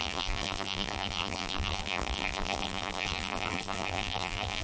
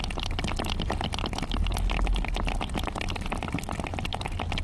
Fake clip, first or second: first